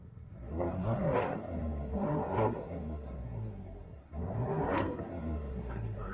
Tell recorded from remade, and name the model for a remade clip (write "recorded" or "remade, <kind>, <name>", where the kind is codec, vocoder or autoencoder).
remade, codec, SNAC